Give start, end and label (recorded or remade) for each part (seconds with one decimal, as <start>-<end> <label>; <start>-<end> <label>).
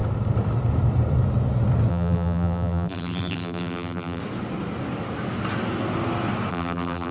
0.0-1.9 recorded; 1.9-4.2 remade; 4.2-6.5 recorded; 6.5-7.1 remade